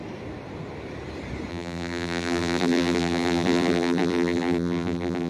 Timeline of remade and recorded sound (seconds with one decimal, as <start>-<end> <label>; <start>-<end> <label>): 0.0-1.5 recorded; 1.5-5.3 remade